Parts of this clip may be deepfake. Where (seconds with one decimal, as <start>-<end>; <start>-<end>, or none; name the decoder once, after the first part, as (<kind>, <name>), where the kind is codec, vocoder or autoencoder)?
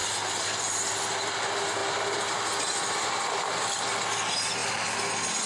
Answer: none